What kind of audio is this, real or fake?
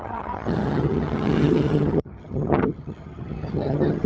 fake